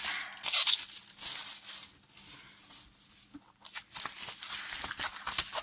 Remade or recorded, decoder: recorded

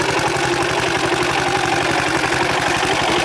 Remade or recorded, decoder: recorded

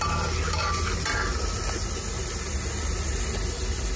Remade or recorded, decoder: recorded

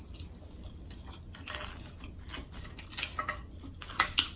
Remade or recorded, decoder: recorded